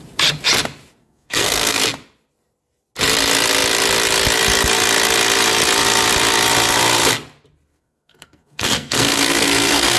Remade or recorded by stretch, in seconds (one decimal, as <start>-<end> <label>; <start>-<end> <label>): 0.0-1.0 recorded; 1.0-1.8 remade; 1.8-7.7 recorded; 7.7-10.0 remade